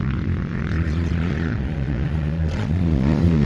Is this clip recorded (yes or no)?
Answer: no